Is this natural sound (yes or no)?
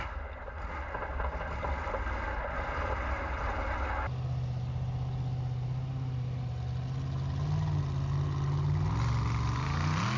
yes